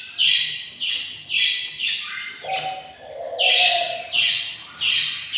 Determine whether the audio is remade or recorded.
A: recorded